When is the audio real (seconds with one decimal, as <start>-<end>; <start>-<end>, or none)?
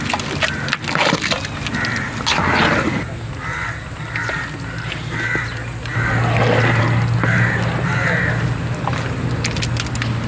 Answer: 0.0-10.3